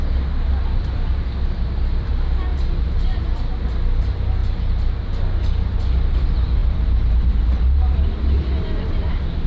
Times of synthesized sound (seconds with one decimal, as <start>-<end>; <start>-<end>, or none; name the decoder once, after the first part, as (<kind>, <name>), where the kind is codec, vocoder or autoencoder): 2.5-3.2 (vocoder, BigVGAN v2); 6.6-9.1